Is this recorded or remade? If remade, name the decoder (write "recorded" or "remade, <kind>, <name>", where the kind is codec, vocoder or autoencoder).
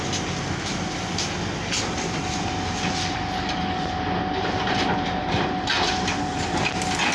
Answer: recorded